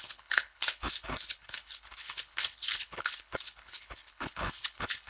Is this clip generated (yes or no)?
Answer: yes